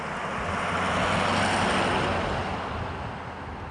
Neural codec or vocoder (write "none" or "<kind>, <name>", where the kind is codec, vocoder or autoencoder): none